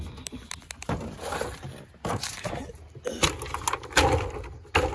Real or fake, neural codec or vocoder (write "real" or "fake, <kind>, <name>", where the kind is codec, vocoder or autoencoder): real